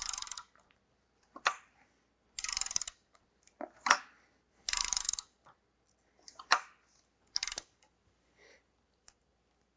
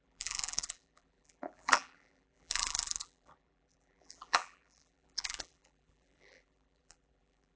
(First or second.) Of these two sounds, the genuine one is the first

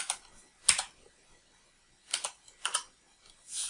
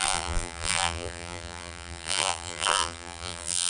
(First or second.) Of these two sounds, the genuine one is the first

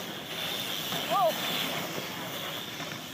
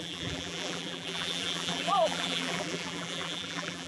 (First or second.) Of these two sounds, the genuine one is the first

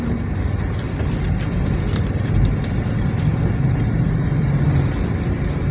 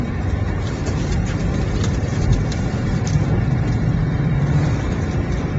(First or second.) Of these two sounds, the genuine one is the first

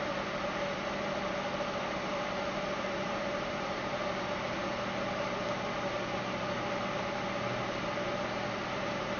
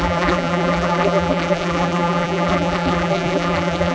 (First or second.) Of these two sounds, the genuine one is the first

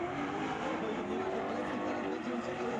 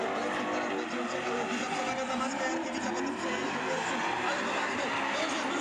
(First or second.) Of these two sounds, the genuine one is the second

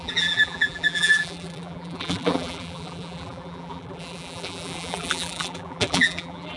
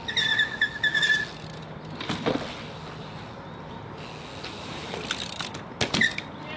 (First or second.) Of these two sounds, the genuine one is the second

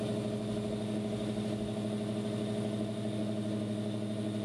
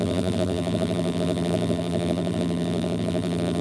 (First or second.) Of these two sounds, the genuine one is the first